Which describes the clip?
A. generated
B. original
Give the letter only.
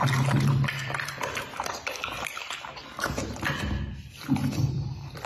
A